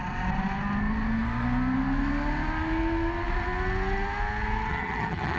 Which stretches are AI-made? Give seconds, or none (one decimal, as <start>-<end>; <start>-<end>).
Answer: 4.7-5.4